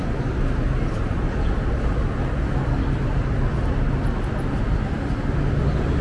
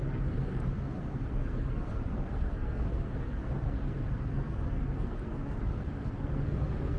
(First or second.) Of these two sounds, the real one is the first